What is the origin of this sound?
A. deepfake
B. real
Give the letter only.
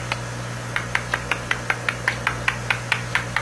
B